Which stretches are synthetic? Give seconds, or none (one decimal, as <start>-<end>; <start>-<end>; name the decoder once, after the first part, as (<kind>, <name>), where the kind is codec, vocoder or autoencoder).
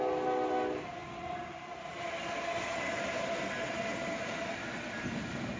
none